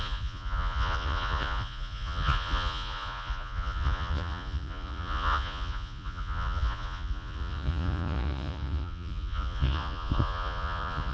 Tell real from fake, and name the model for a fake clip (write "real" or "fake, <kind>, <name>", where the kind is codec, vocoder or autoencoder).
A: fake, vocoder, Vocos